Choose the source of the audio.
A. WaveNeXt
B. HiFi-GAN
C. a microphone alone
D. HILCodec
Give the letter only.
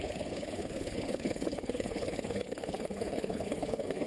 D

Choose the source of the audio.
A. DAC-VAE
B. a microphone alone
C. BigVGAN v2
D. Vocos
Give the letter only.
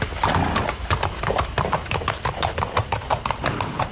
B